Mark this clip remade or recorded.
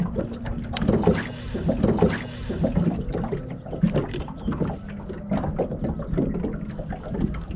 recorded